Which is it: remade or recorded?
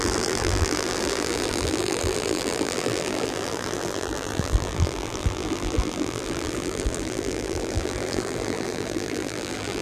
remade